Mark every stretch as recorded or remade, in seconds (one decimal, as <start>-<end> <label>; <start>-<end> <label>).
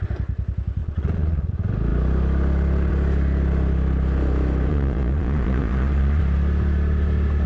0.0-0.8 recorded; 0.8-1.5 remade; 1.5-4.7 recorded; 4.7-6.2 remade; 6.2-7.5 recorded